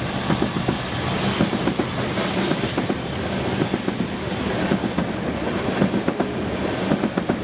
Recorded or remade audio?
recorded